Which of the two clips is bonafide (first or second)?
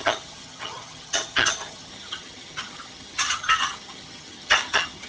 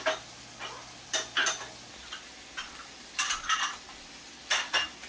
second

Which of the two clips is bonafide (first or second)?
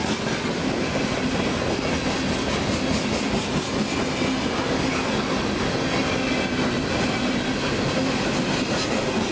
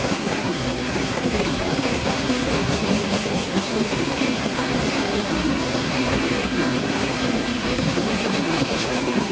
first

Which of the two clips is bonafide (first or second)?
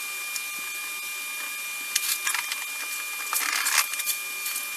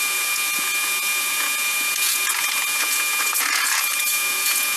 first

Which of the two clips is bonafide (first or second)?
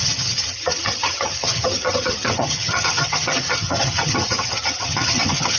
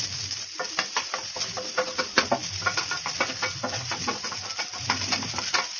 second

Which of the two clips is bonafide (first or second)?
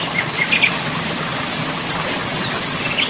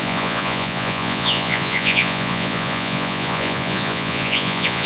first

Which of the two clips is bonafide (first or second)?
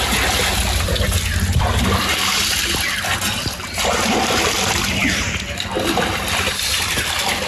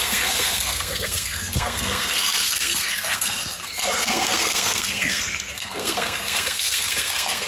first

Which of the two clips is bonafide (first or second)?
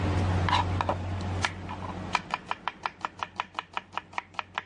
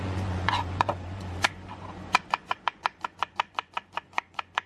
first